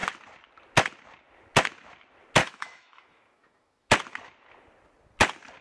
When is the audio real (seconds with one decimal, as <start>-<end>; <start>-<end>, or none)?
0.0-2.4; 3.9-5.6